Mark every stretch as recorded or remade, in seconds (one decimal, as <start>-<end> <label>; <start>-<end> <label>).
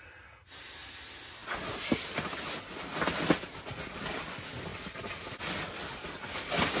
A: 0.0-6.8 recorded